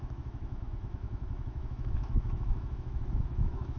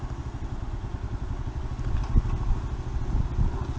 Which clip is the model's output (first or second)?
first